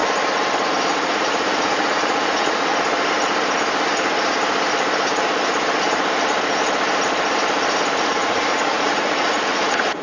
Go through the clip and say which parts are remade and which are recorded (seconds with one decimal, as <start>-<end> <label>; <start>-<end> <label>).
0.0-0.9 recorded; 0.9-2.7 remade; 2.7-7.9 recorded; 7.9-10.0 remade